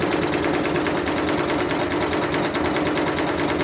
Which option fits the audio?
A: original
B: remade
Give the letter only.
A